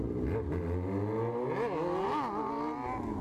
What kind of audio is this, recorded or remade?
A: recorded